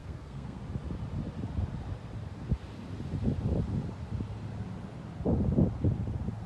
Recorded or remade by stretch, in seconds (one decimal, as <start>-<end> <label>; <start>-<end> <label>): 0.0-0.6 remade; 0.6-6.5 recorded